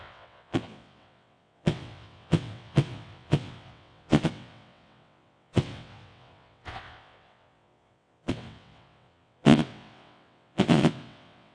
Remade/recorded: remade